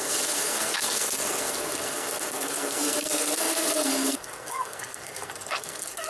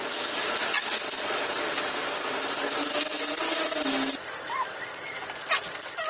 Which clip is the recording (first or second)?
second